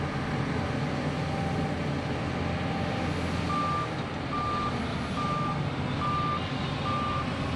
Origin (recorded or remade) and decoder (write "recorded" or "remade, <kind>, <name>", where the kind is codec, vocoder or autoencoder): recorded